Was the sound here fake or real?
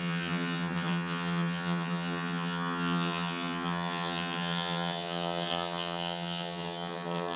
fake